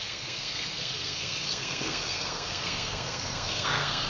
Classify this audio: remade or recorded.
remade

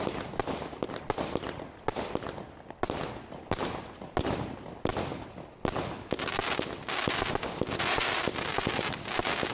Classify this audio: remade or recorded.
recorded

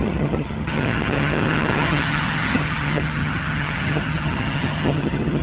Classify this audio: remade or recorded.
remade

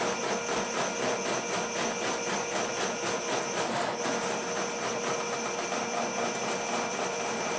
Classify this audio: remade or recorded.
recorded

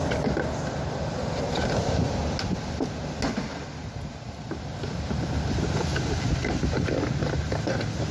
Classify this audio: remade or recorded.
recorded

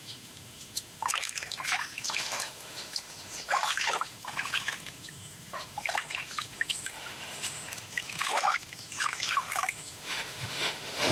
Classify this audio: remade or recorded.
remade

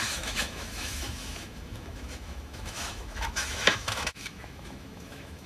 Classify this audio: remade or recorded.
remade